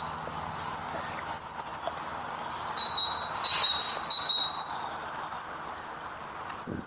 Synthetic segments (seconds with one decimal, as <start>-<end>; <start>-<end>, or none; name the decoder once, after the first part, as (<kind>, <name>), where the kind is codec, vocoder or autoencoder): none